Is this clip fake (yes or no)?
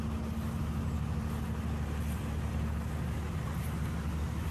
no